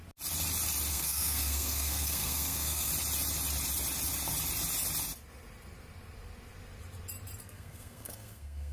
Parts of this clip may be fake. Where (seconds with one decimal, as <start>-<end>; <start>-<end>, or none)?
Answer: 0.9-2.9; 7.4-8.7